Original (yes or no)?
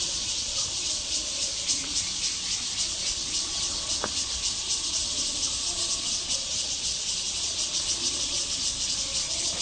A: no